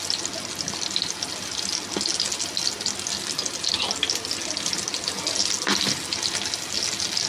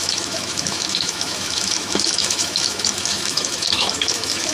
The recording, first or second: first